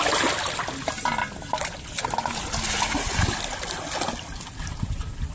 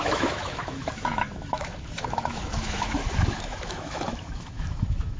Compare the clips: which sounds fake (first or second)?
second